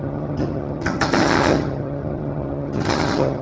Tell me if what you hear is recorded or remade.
remade